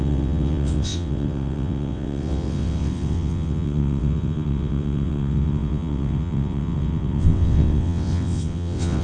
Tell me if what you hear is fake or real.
fake